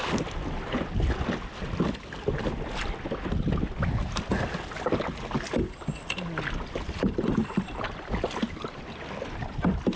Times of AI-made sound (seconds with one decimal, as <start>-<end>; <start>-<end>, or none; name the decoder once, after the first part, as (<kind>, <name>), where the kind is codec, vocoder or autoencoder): none